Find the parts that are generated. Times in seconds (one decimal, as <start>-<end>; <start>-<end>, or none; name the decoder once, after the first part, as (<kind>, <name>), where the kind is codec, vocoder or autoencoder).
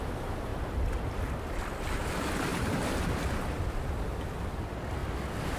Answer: none